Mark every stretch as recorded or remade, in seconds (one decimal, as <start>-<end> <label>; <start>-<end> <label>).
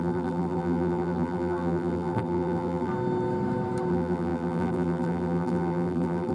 0.0-2.9 remade; 2.9-3.9 recorded; 3.9-6.3 remade